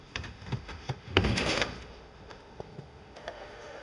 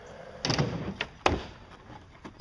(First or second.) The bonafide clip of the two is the second